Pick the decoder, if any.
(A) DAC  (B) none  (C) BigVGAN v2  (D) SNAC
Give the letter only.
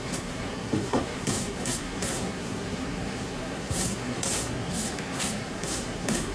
D